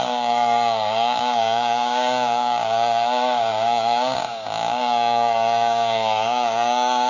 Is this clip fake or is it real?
fake